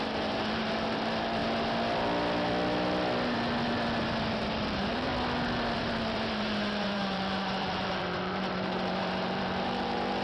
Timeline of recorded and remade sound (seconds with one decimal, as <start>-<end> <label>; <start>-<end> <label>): 0.0-1.4 remade; 1.4-4.3 recorded; 4.3-5.1 remade; 5.1-5.7 recorded; 5.7-10.2 remade